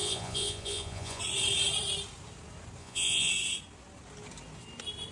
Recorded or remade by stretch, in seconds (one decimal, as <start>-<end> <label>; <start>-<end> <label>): 0.0-1.2 remade; 1.2-2.8 recorded; 2.8-3.3 remade; 3.3-5.1 recorded

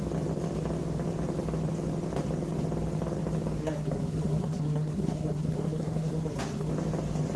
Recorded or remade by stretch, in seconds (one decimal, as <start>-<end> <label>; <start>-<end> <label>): 0.0-3.6 recorded; 3.6-6.7 remade; 6.7-7.4 recorded

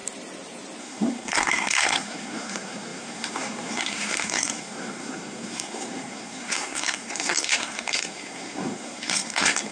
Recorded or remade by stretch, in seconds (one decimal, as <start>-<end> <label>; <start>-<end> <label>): 0.0-0.8 recorded; 0.8-9.7 remade